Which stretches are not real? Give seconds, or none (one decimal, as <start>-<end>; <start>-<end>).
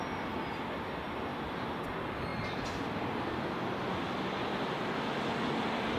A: 1.3-1.8